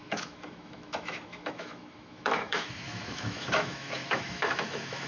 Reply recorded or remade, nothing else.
remade